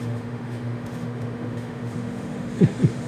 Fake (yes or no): yes